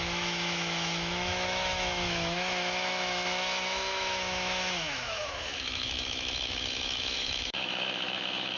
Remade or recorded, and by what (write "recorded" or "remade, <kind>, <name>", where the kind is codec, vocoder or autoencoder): remade, autoencoder, DAC-VAE